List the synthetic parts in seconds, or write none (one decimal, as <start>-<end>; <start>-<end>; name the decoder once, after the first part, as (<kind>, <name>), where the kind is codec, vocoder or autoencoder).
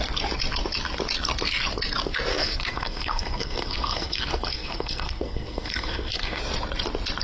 2.3-6.4 (codec, SNAC)